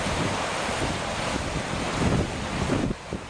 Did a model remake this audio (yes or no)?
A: no